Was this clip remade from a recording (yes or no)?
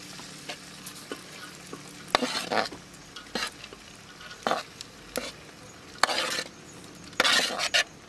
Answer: no